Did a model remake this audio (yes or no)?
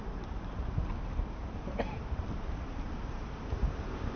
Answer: yes